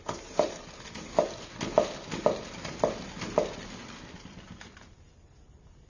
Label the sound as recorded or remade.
recorded